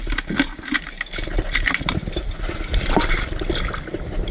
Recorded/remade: recorded